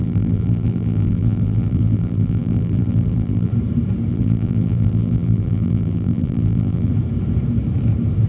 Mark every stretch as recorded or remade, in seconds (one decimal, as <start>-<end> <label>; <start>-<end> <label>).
0.0-3.5 remade; 3.5-4.1 recorded; 4.1-6.9 remade; 6.9-8.3 recorded